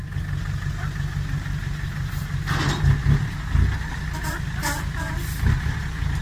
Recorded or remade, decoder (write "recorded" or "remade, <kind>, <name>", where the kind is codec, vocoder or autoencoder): recorded